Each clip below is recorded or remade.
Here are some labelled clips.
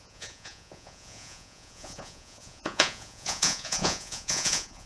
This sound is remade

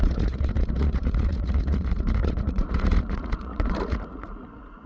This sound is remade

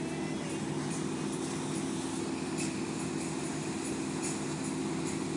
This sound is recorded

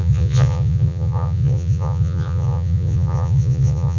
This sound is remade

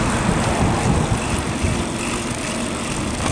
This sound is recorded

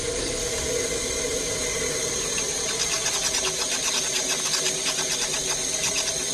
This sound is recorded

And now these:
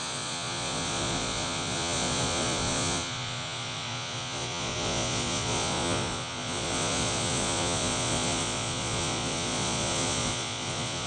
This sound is remade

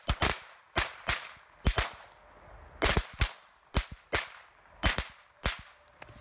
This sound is recorded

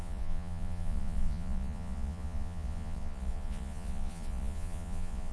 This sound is remade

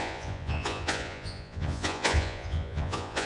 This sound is remade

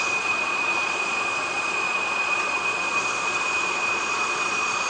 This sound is remade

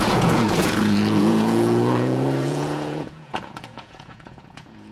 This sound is remade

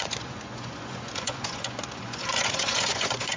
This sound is remade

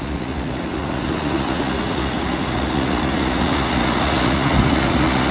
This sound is remade